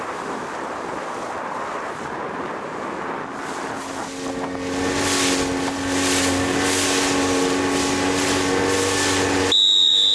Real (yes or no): yes